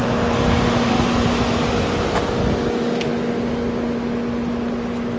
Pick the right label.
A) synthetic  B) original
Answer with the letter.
B